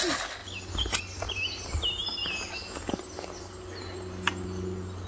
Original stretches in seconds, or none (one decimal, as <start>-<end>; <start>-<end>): 0.0-5.1